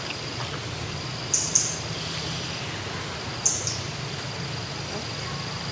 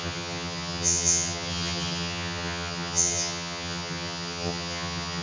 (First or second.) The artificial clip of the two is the second